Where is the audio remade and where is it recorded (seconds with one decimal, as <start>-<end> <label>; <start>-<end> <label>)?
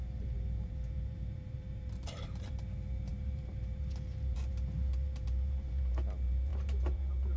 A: 0.0-7.4 remade